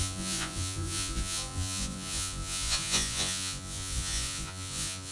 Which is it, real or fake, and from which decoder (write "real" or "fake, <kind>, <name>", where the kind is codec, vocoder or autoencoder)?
fake, vocoder, Vocos